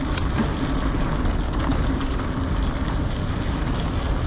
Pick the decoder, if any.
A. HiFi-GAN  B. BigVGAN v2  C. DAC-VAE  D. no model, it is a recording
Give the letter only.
D